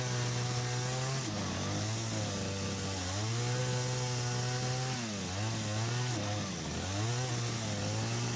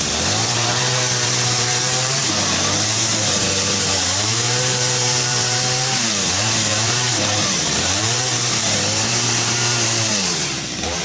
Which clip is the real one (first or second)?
first